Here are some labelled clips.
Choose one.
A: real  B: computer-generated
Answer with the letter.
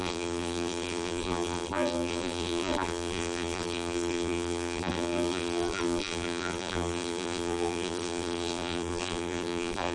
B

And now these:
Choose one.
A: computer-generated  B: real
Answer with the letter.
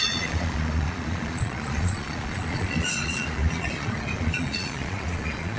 A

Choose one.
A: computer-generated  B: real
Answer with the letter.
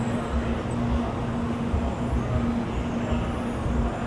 B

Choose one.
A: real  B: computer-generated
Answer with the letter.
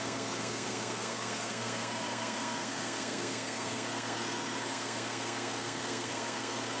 B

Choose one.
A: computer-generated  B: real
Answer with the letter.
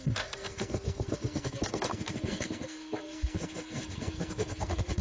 A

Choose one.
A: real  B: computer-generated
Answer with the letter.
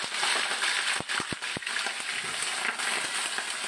A